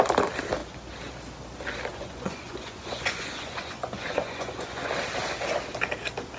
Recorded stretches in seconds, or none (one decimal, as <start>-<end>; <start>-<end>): 0.0-1.9; 4.9-6.4